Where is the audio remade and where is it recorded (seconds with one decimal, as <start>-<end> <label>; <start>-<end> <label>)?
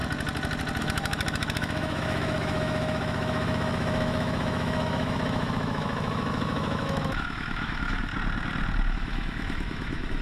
0.0-0.8 recorded; 0.8-8.1 remade; 8.1-8.9 recorded; 8.9-10.2 remade